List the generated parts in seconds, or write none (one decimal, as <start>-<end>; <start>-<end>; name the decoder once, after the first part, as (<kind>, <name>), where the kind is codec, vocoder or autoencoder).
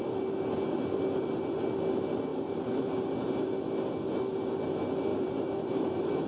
2.3-3.5 (vocoder, BigVGAN v2); 5.1-6.3